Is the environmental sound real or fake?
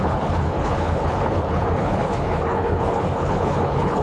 fake